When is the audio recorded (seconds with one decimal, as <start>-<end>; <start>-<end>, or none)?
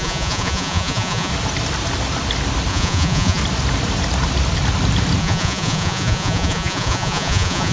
1.3-2.7; 3.4-5.2